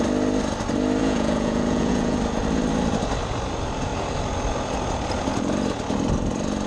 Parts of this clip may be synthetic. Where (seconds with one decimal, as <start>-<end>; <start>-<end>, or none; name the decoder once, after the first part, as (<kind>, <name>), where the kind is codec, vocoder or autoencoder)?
1.0-2.2 (vocoder, Vocos)